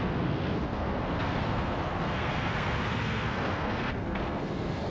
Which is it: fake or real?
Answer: fake